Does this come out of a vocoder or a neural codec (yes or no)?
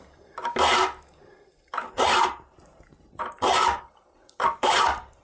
no